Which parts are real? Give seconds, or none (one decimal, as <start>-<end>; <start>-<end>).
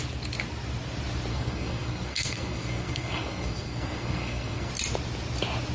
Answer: 0.0-1.3; 4.7-5.7